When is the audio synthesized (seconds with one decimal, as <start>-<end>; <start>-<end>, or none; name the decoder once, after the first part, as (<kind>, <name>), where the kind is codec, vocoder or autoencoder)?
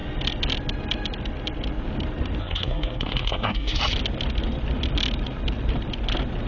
2.4-3.8 (codec, SNAC)